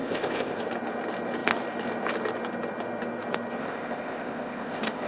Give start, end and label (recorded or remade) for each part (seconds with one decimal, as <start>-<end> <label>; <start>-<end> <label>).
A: 0.0-0.6 remade; 0.6-3.6 recorded; 3.6-5.1 remade